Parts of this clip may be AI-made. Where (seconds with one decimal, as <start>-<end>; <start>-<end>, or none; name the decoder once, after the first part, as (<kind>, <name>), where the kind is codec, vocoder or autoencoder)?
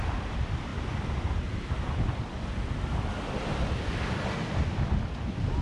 none